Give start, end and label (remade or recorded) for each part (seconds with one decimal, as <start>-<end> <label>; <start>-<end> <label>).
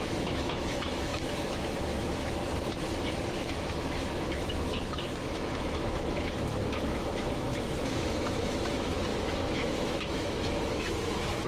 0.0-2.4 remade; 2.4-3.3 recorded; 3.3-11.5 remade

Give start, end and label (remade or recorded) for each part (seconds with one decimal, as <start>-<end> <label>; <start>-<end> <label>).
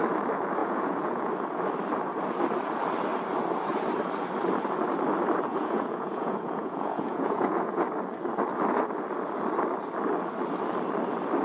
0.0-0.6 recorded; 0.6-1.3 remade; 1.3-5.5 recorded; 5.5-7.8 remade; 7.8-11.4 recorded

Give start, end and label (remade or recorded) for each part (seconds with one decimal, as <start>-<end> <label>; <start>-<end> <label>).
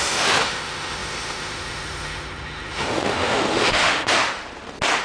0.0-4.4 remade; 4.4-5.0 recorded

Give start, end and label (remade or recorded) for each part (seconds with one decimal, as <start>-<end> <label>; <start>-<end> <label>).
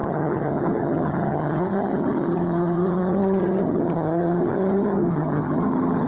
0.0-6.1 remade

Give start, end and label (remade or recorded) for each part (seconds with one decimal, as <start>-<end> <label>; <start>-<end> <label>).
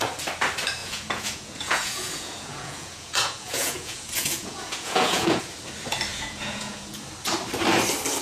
0.0-0.8 recorded; 0.8-5.4 remade; 5.4-6.1 recorded; 6.1-7.0 remade; 7.0-8.2 recorded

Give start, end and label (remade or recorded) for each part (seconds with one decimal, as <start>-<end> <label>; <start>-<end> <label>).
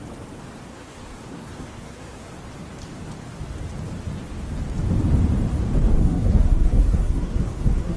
0.0-0.7 recorded; 0.7-2.3 remade; 2.3-6.0 recorded; 6.0-8.0 remade